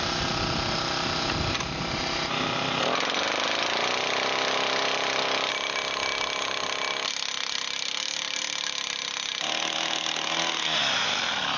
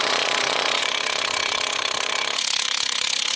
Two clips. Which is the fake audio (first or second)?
second